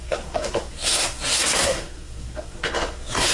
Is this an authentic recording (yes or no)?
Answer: no